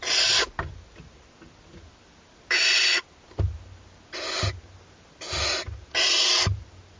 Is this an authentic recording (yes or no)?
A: yes